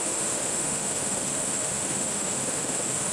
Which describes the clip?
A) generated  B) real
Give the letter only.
A